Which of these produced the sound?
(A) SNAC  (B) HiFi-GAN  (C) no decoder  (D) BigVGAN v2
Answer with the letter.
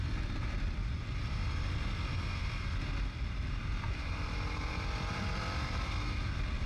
D